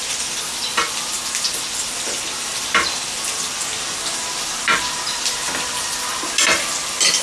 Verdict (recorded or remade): recorded